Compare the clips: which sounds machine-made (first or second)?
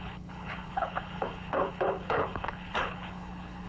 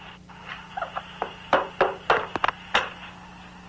first